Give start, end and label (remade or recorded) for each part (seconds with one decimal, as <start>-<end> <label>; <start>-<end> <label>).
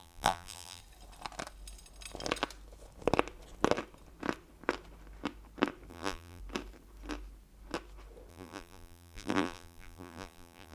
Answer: 0.0-0.8 remade; 0.8-5.9 recorded; 5.9-6.4 remade; 6.4-8.3 recorded; 8.3-10.7 remade